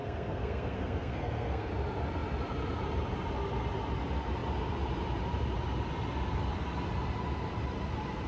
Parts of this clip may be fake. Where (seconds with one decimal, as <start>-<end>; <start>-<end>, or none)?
0.0-1.7